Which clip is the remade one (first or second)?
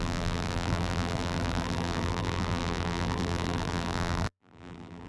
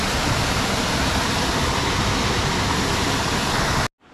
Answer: first